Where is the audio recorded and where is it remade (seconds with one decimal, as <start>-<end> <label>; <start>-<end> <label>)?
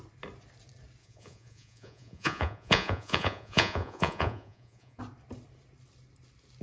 0.0-1.0 recorded; 1.0-5.0 remade; 5.0-6.6 recorded